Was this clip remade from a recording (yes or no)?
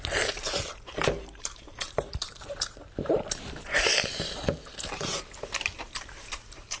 yes